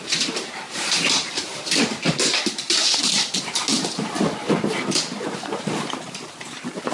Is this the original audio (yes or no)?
no